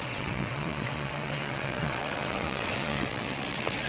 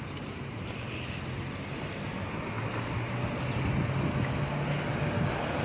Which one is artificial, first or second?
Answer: first